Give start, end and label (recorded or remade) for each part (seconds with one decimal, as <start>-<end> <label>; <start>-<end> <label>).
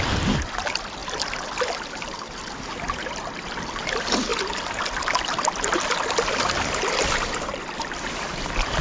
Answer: 0.0-8.8 recorded